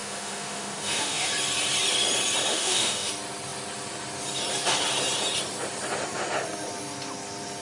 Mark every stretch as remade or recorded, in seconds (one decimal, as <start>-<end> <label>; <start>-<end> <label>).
0.0-1.3 remade; 1.3-2.5 recorded; 2.5-3.1 remade; 3.1-7.6 recorded